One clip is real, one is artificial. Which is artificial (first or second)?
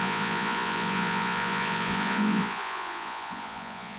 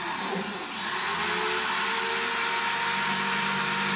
first